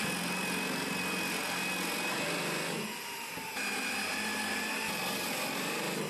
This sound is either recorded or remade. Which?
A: recorded